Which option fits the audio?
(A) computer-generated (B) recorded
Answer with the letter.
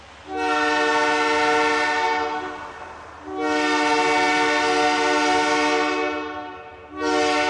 B